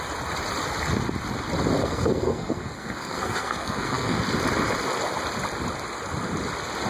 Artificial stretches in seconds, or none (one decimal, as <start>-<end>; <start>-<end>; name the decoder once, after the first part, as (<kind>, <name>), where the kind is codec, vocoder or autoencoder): 1.8-4.2 (codec, SNAC)

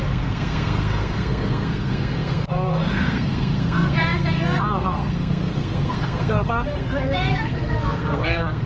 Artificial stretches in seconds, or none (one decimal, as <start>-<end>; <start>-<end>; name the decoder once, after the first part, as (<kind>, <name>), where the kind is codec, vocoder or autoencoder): 0.0-8.7 (codec, SNAC)

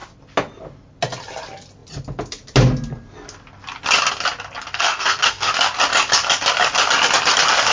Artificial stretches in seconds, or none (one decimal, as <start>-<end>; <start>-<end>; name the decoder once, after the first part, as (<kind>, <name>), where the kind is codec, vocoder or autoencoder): 4.7-5.5 (codec, SNAC)

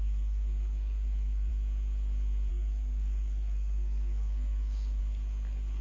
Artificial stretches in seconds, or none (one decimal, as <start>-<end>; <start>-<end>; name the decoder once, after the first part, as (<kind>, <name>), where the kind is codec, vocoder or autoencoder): 0.0-1.5 (codec, SNAC); 2.5-5.0

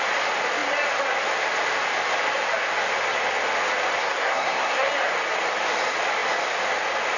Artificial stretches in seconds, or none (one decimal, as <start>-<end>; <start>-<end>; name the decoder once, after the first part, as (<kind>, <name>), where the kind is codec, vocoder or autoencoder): 4.0-4.9 (codec, SNAC)